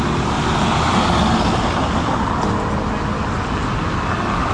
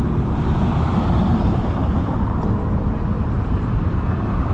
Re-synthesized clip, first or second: second